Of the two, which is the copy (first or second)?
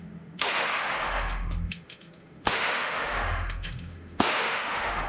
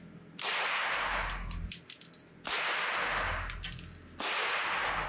first